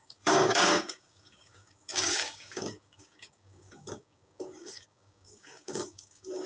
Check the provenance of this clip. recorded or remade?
remade